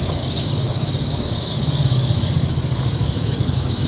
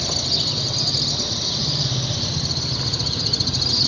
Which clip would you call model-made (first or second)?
first